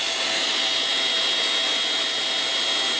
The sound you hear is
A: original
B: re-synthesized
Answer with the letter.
A